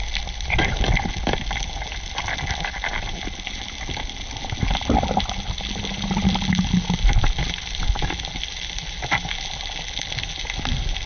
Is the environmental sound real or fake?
real